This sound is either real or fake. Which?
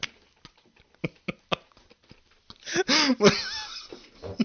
real